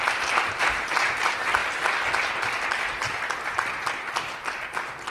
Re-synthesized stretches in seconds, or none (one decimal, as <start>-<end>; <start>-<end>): none